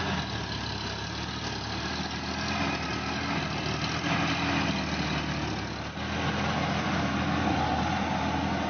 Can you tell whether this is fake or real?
real